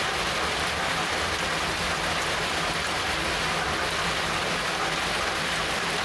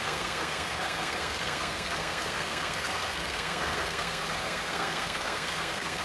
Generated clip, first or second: second